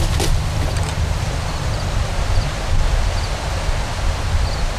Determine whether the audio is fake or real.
real